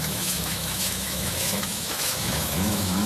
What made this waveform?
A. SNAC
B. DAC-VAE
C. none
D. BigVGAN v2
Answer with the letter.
B